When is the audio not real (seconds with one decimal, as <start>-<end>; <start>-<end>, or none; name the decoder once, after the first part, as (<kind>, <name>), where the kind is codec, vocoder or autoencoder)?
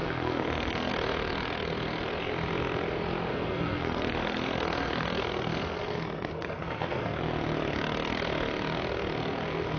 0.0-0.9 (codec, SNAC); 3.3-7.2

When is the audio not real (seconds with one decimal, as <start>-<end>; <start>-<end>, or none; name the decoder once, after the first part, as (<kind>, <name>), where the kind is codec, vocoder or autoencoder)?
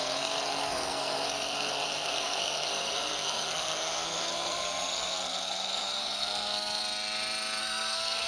0.0-6.8 (codec, SNAC); 7.6-8.3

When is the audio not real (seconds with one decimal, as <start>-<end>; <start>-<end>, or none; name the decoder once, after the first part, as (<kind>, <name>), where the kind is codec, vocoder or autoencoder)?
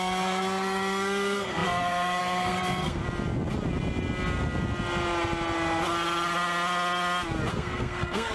0.0-3.0 (codec, SNAC); 7.5-8.3